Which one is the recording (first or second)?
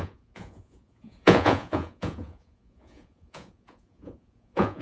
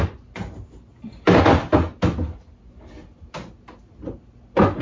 second